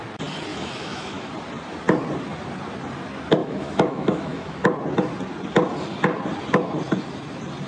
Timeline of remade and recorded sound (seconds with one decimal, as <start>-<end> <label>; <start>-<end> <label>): 0.0-0.5 recorded; 0.5-1.3 remade; 1.3-3.4 recorded; 3.4-4.6 remade; 4.6-7.7 recorded